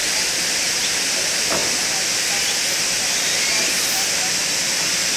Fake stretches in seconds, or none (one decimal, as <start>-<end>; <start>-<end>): none

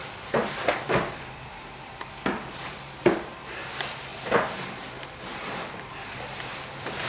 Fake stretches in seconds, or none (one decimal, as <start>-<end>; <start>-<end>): 0.0-2.3

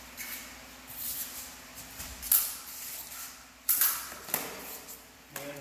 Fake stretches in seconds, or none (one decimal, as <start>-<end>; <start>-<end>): 0.0-0.4; 1.0-1.7; 3.9-5.6

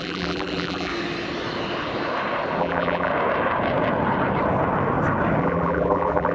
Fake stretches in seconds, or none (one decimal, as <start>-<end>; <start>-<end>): 0.0-0.9; 2.6-3.1; 5.4-6.3

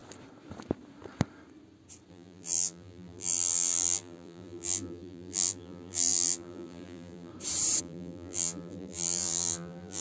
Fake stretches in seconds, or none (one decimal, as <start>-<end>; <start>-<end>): 2.1-7.3; 7.8-10.0

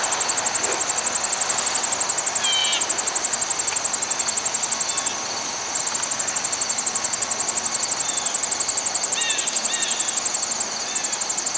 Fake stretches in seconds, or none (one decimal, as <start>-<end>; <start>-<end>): none

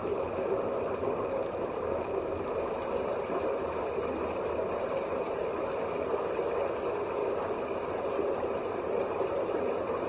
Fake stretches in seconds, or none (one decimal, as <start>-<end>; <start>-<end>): 3.1-3.8

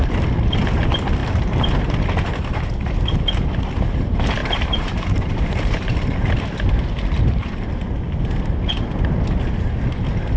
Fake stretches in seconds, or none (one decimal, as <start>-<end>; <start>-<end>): 1.2-1.9; 4.4-7.5